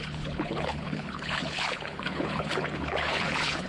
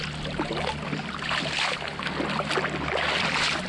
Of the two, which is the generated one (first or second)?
first